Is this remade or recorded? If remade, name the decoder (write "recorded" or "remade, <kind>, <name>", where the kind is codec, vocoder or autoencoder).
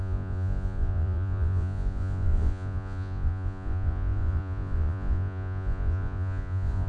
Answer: remade, vocoder, Vocos